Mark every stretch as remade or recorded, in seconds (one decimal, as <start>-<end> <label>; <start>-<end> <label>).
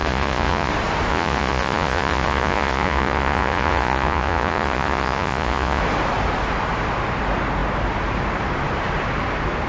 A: 0.0-0.7 remade; 0.7-1.1 recorded; 1.1-5.8 remade; 5.8-9.7 recorded